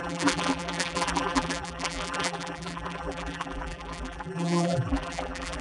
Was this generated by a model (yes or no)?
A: yes